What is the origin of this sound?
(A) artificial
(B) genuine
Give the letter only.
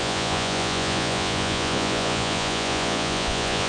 A